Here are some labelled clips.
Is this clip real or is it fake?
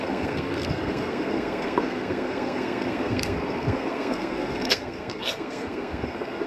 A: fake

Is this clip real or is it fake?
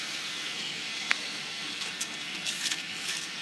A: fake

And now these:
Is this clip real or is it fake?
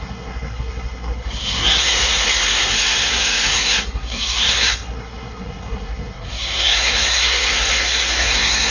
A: fake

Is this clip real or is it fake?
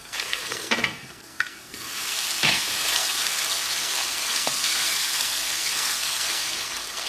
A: fake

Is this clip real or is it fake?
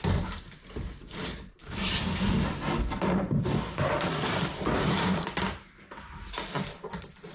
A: real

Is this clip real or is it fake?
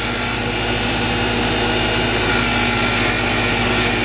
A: real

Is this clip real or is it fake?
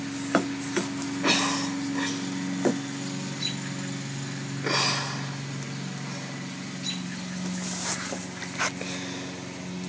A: real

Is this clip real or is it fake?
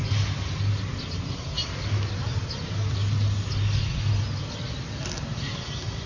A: real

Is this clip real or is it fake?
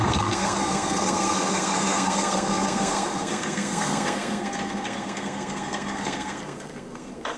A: fake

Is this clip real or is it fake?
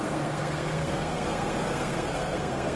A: fake